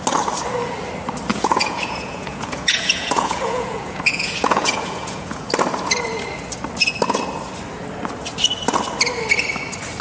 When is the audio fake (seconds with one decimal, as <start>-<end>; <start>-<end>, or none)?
1.3-5.5